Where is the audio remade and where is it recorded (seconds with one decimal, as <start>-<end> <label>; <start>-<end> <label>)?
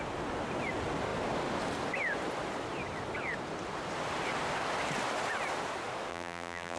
0.0-6.1 recorded; 6.1-6.8 remade